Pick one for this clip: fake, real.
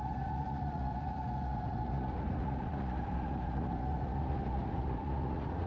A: fake